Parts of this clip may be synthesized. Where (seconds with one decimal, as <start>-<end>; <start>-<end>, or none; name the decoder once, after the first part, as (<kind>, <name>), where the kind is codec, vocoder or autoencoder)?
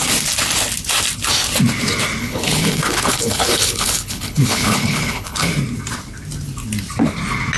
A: 2.2-5.5 (codec, HILCodec)